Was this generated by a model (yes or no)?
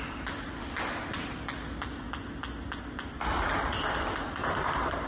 no